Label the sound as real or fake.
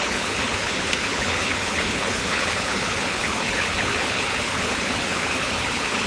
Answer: fake